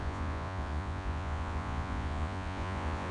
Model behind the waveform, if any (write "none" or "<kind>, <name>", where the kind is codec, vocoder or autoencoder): vocoder, Vocos